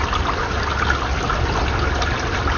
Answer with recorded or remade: recorded